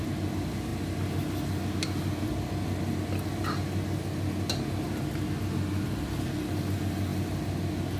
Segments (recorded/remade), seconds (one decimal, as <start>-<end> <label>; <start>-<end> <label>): 0.0-8.0 recorded